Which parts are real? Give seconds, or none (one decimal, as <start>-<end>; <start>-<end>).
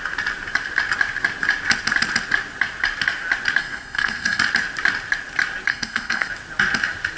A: 0.0-3.6; 4.4-5.7; 6.3-7.2